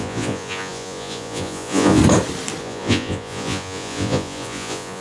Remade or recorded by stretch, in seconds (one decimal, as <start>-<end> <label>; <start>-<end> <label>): 0.0-2.0 remade; 2.0-2.6 recorded; 2.6-5.0 remade